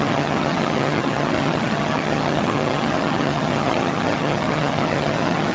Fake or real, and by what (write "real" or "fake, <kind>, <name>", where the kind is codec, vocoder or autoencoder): fake, vocoder, HiFi-GAN